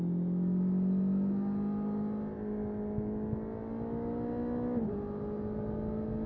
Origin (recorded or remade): recorded